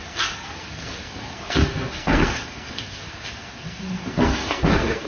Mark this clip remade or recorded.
remade